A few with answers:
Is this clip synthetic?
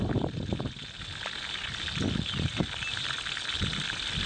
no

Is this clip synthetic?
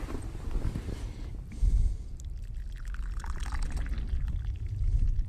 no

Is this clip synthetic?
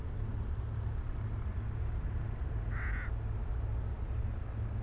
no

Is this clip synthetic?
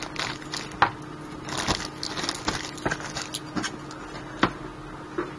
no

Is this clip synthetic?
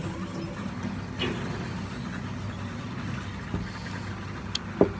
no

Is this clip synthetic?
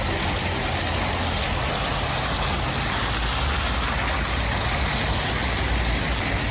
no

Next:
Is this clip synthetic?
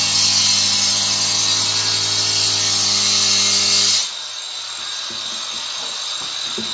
no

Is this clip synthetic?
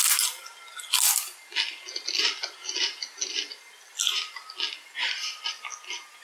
no